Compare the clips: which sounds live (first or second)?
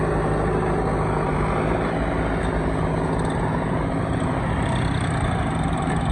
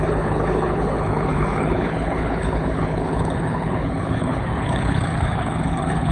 first